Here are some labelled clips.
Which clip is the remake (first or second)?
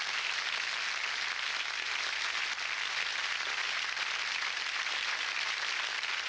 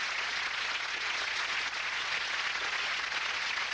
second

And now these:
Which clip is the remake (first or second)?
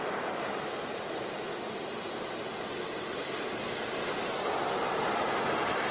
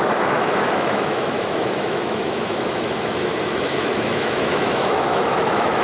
second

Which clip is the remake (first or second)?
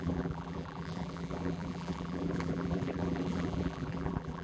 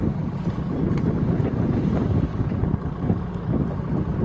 first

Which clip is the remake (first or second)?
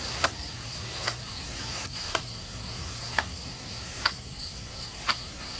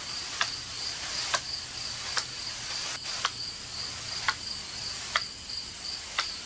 first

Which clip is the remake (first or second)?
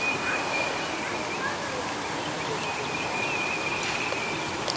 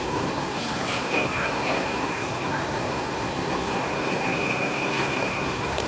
second